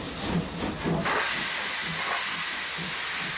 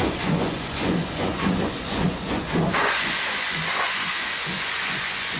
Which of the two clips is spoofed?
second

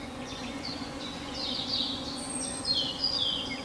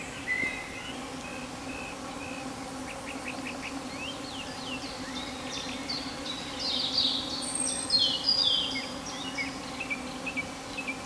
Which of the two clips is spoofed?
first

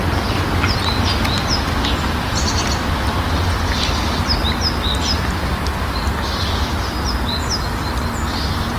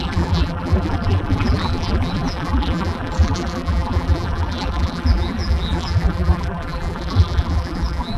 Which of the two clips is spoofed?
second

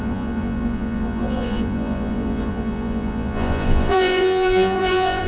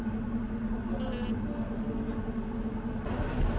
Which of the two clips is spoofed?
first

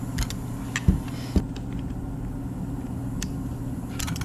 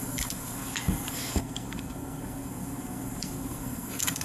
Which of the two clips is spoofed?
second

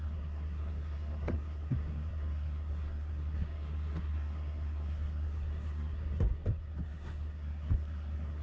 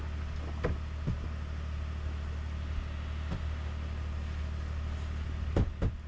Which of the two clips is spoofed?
first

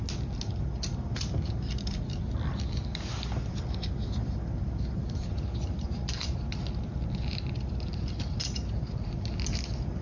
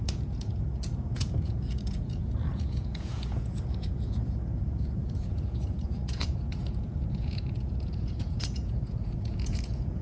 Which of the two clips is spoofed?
second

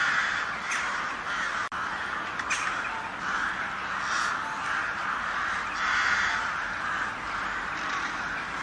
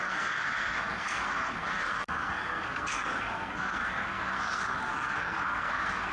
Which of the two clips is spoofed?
second